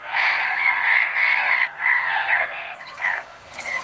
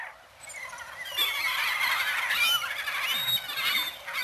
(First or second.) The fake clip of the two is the first